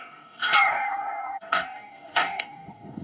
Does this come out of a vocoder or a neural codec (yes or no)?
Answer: yes